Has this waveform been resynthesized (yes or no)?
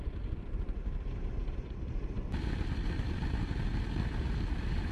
no